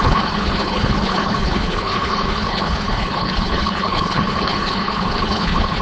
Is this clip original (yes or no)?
no